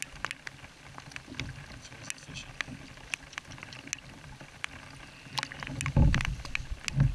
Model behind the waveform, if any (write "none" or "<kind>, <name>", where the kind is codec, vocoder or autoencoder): none